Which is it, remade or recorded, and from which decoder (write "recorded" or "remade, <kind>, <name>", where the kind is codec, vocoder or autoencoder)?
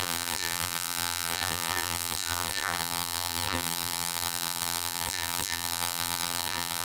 remade, vocoder, BigVGAN v2